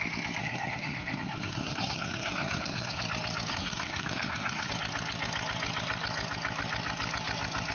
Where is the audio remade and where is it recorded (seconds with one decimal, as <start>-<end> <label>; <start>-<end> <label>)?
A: 0.0-0.4 recorded; 0.4-3.0 remade; 3.0-3.5 recorded; 3.5-4.7 remade; 4.7-7.7 recorded